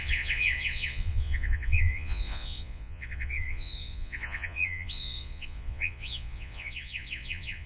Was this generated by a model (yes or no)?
yes